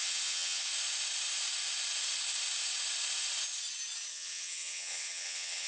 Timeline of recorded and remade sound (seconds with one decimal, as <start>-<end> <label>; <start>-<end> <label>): 0.0-0.7 remade; 0.7-4.1 recorded; 4.1-5.7 remade